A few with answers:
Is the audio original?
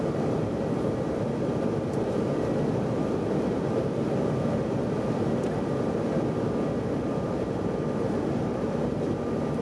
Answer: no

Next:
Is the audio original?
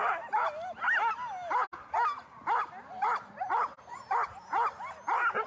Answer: yes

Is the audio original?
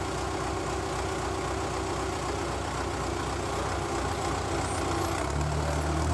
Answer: yes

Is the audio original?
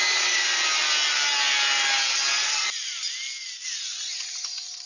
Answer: yes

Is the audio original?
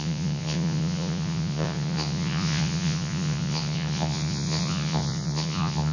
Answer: no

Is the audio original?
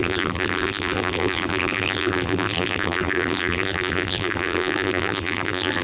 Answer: no